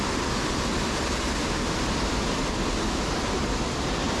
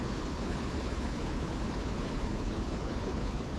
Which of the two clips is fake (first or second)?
second